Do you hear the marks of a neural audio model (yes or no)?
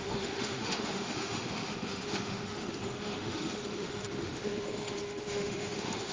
yes